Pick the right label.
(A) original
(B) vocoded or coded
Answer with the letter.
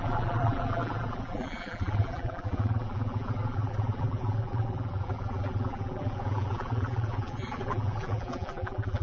B